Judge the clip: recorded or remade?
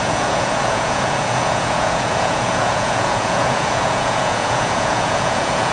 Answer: remade